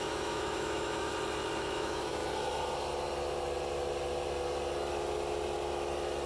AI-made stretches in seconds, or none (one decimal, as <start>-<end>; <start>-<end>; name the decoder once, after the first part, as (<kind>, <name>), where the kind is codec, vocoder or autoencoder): 0.0-1.1 (autoencoder, DAC-VAE); 1.6-2.2